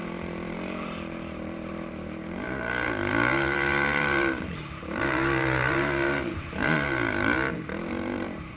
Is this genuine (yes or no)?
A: no